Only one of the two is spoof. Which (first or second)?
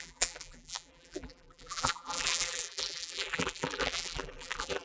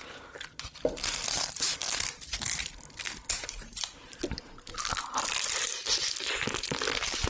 first